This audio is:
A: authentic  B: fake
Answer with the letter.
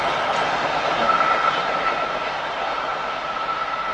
A